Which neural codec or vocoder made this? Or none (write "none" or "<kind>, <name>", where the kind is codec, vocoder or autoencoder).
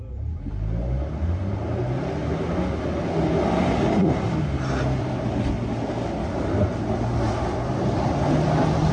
none